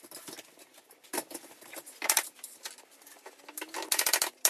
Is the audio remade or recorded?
recorded